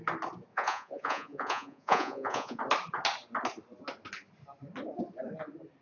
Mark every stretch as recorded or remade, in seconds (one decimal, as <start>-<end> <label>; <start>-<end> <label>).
0.0-0.5 recorded; 0.5-2.6 remade; 2.6-5.8 recorded